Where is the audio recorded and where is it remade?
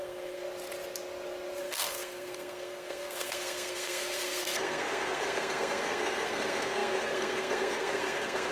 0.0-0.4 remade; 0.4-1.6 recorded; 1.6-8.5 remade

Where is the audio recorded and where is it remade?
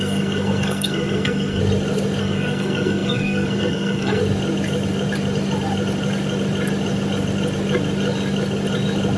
0.0-1.6 remade; 1.6-2.2 recorded; 2.2-4.2 remade; 4.2-9.2 recorded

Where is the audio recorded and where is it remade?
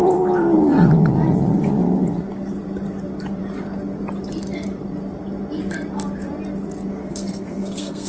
0.0-7.0 recorded; 7.0-8.1 remade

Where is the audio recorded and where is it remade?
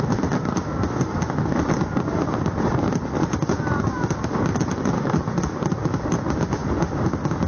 0.0-7.5 recorded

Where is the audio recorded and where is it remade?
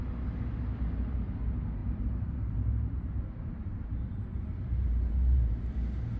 0.0-1.8 recorded; 1.8-5.5 remade; 5.5-6.2 recorded